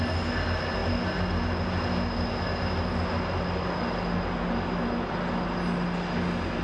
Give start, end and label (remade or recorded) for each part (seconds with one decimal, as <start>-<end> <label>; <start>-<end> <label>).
0.0-6.6 recorded